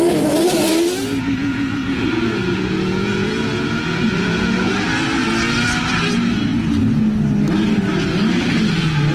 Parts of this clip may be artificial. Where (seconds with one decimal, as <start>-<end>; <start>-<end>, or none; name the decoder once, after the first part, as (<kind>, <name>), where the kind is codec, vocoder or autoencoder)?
1.4-4.7 (vocoder, Vocos)